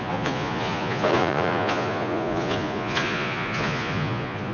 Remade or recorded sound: remade